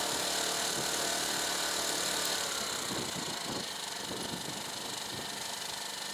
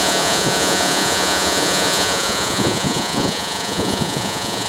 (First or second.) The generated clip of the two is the second